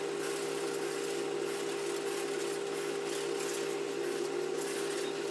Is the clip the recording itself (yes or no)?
yes